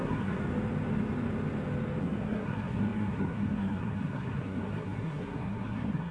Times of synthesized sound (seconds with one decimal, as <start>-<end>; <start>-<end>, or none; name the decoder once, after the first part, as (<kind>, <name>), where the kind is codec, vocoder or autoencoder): 0.0-0.4 (codec, SNAC); 2.0-6.1